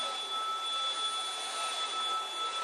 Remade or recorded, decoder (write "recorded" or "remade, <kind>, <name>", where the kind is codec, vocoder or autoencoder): recorded